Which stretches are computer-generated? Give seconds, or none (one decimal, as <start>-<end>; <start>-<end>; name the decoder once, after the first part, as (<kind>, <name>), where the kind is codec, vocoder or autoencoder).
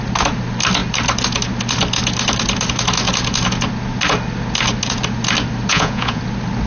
5.7-6.2 (vocoder, Vocos)